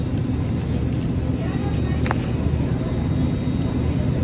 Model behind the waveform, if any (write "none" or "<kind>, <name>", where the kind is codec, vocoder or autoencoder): none